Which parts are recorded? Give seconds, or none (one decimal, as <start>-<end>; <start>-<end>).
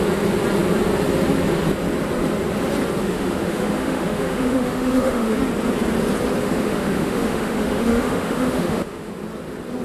0.0-3.0; 5.4-6.4; 9.1-9.8